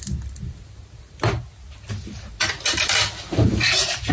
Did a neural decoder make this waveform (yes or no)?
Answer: no